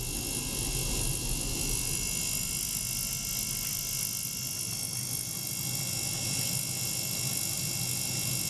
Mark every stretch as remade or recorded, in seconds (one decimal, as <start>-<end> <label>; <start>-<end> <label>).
0.0-8.5 recorded